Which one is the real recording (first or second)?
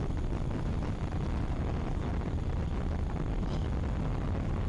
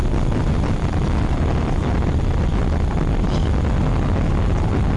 second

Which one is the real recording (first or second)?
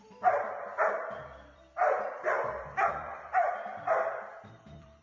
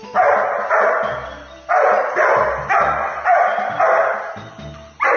second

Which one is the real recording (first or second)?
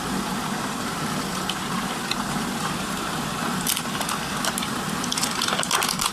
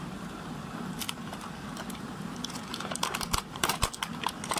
first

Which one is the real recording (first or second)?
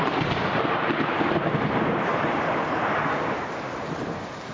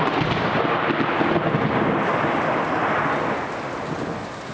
second